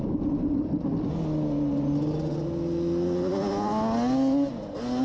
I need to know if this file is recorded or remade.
recorded